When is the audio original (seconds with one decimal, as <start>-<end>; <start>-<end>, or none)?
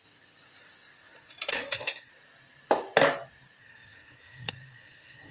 0.0-1.5; 2.1-3.6